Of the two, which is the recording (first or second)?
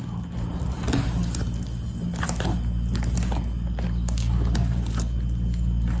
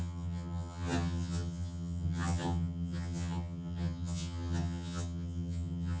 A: first